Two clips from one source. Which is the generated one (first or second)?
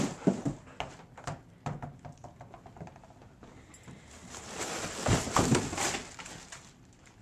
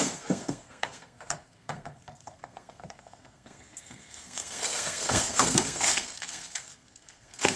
second